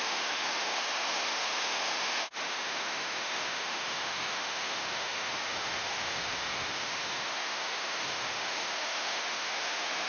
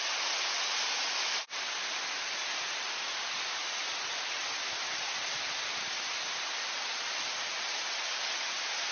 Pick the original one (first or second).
second